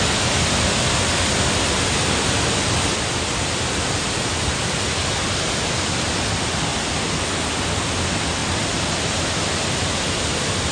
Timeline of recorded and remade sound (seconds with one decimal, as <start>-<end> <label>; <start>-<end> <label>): 0.0-10.7 recorded